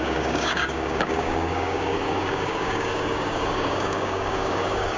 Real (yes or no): no